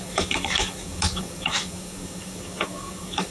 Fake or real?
fake